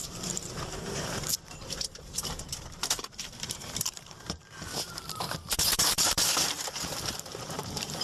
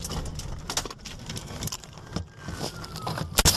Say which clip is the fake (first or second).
first